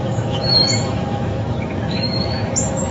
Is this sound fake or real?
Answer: fake